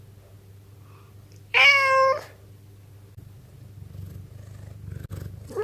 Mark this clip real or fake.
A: real